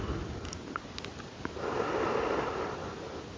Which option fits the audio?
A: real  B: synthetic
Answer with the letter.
A